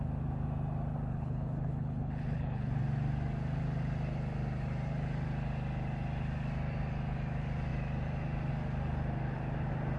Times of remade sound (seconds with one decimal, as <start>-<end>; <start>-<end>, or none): 1.1-2.8